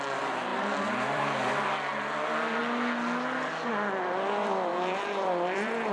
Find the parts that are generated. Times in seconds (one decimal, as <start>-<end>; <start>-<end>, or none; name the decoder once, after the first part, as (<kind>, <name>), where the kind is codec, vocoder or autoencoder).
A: 0.0-2.6 (vocoder, BigVGAN v2); 3.7-5.9